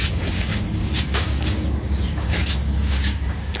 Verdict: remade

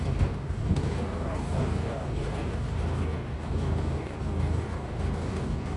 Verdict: remade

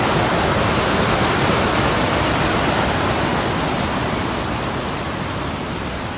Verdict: recorded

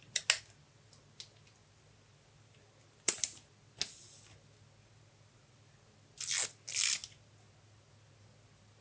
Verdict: recorded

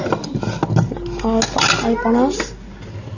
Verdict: recorded